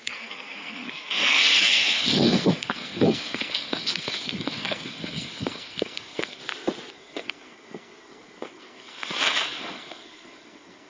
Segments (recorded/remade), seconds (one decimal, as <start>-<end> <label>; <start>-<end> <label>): 0.0-6.4 remade; 6.4-6.9 recorded; 6.9-10.9 remade